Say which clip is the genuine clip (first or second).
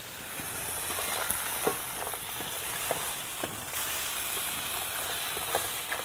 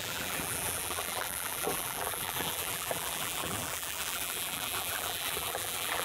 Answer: first